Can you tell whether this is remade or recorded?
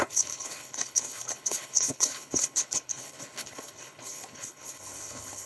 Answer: remade